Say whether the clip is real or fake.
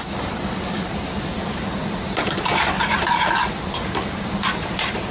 fake